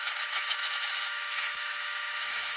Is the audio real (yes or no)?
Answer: no